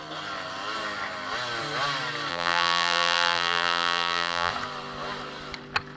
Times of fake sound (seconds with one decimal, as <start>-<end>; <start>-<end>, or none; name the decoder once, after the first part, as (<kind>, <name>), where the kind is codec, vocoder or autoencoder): 2.3-4.5 (vocoder, BigVGAN v2)